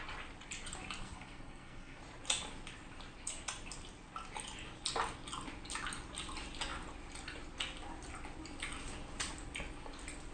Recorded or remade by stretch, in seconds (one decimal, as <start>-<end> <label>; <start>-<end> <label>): 0.0-1.0 recorded; 1.0-2.0 remade; 2.0-10.3 recorded

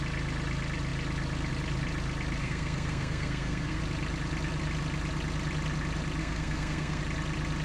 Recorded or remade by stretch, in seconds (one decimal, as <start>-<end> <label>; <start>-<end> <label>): 0.0-2.4 recorded; 2.4-3.8 remade; 3.8-6.2 recorded; 6.2-7.0 remade; 7.0-7.6 recorded